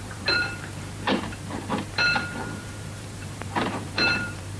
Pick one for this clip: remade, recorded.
remade